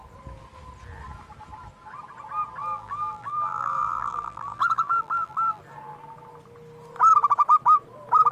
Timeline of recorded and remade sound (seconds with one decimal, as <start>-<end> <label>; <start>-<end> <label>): 0.0-2.6 recorded; 2.6-5.6 remade; 5.6-8.3 recorded